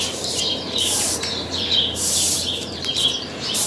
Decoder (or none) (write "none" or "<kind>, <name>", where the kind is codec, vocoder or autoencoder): vocoder, BigVGAN v2